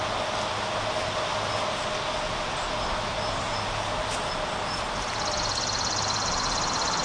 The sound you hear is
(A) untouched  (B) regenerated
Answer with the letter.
A